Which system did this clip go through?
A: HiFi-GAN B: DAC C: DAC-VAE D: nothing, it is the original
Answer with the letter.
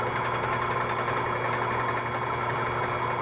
D